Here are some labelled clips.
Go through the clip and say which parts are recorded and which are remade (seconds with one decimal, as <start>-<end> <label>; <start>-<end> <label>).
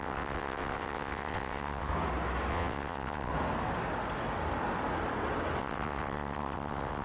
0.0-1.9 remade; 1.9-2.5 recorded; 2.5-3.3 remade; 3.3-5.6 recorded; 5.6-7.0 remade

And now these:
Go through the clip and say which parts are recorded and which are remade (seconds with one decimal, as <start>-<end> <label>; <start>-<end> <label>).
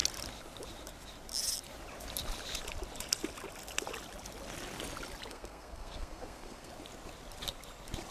0.0-5.3 recorded; 5.3-6.7 remade; 6.7-8.1 recorded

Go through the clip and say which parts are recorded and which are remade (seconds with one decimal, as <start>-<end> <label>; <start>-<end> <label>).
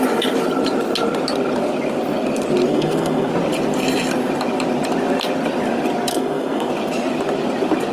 0.0-2.7 recorded; 2.7-3.3 remade; 3.3-6.1 recorded; 6.1-6.7 remade; 6.7-7.9 recorded